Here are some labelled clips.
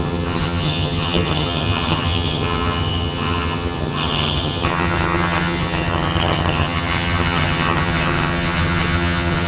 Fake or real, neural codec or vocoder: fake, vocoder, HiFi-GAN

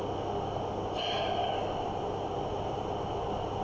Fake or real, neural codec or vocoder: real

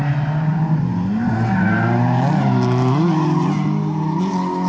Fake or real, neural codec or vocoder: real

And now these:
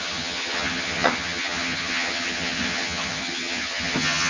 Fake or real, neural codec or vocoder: fake, vocoder, HiFi-GAN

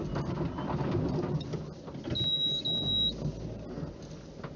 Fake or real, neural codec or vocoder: real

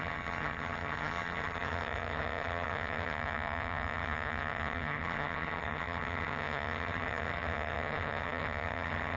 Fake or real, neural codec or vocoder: fake, vocoder, HiFi-GAN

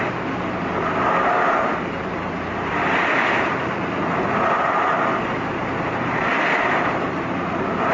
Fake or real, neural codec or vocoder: real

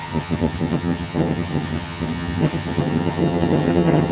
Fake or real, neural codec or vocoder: fake, vocoder, HiFi-GAN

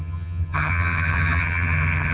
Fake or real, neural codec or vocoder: fake, vocoder, HiFi-GAN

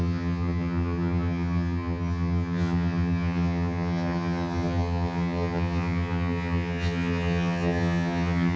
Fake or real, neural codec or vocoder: fake, vocoder, HiFi-GAN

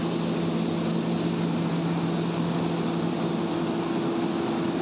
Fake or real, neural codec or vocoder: real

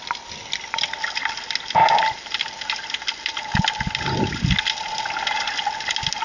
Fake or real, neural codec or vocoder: real